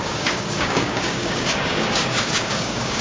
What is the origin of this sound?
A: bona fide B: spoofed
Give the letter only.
B